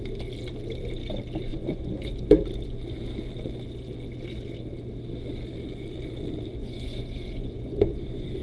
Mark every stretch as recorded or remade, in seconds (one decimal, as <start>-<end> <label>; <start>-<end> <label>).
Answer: 0.0-1.5 recorded; 1.5-2.1 remade; 2.1-6.6 recorded; 6.6-8.4 remade